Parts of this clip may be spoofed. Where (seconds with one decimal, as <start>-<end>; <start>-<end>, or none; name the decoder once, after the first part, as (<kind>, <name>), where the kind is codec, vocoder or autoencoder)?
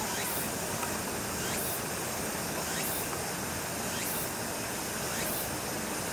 4.7-5.3 (vocoder, BigVGAN v2)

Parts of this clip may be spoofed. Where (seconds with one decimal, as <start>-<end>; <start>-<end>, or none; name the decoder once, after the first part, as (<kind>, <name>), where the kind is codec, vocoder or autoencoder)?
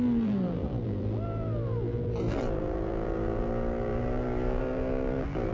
0.0-5.5 (vocoder, BigVGAN v2)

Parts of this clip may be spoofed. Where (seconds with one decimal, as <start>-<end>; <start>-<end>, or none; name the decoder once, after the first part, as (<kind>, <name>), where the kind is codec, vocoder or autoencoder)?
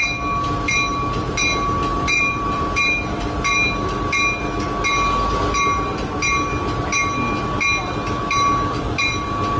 1.9-3.0 (vocoder, BigVGAN v2)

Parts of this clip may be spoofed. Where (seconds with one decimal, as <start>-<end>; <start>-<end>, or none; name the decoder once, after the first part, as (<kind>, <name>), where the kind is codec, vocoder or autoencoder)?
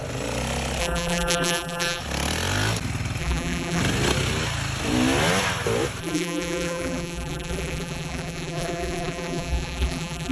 0.8-2.0 (vocoder, BigVGAN v2); 3.2-3.8; 6.0-10.3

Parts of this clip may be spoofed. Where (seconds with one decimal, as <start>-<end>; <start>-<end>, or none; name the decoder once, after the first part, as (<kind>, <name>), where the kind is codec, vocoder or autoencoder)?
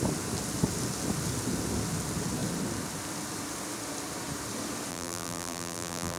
4.9-6.2 (vocoder, BigVGAN v2)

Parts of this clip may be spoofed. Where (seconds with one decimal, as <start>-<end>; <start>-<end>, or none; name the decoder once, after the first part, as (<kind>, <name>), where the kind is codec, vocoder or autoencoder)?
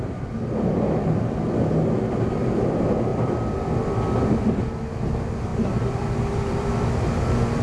5.5-6.9 (vocoder, BigVGAN v2)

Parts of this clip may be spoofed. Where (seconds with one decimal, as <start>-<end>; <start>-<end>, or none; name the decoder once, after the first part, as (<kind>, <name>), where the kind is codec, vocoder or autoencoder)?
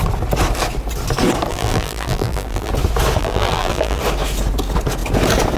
1.5-2.7 (vocoder, BigVGAN v2); 3.2-4.0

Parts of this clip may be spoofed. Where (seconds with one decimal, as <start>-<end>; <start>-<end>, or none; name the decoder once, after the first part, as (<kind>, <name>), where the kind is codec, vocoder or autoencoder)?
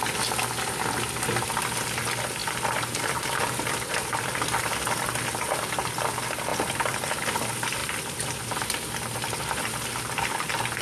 2.4-5.1 (vocoder, BigVGAN v2); 6.5-7.2; 7.8-10.3